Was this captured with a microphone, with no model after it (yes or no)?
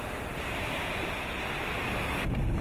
yes